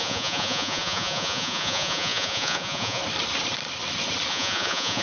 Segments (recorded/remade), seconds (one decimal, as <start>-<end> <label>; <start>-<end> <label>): 0.0-3.0 remade; 3.0-4.3 recorded; 4.3-5.0 remade